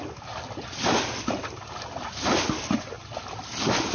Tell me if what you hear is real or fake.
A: real